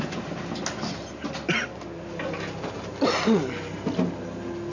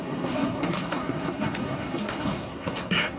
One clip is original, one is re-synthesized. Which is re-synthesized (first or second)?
second